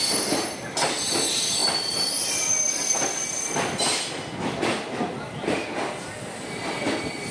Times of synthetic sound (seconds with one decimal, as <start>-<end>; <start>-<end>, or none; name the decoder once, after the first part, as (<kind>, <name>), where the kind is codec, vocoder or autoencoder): none